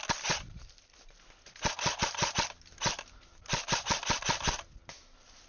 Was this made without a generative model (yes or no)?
yes